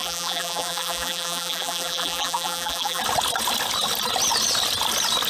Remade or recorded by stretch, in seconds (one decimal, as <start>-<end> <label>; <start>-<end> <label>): 0.0-3.0 remade; 3.0-5.3 recorded